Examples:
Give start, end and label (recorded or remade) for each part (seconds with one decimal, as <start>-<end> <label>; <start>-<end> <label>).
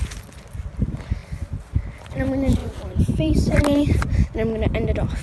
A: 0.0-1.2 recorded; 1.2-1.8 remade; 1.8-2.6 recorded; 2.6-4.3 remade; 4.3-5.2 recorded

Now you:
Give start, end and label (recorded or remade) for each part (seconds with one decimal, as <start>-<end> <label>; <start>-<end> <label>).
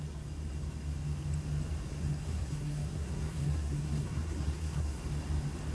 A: 0.0-1.9 recorded; 1.9-5.0 remade; 5.0-5.7 recorded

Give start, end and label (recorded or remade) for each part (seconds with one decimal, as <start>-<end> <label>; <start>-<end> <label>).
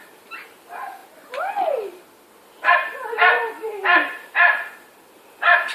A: 0.0-5.7 recorded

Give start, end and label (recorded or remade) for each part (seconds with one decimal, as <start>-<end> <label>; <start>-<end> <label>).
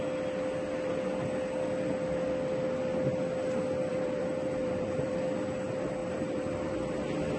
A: 0.0-3.9 recorded; 3.9-5.1 remade; 5.1-6.0 recorded; 6.0-7.4 remade